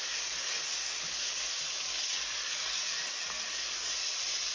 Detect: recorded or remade recorded